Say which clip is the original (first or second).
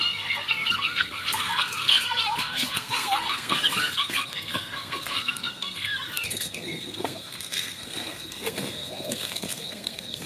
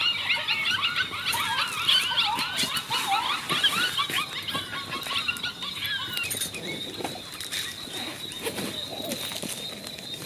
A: second